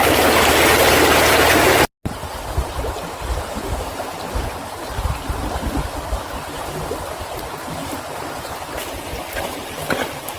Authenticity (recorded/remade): recorded